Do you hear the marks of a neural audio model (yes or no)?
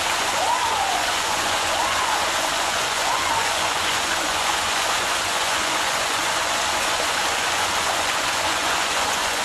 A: yes